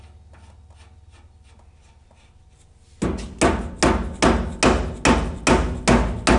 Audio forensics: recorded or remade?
recorded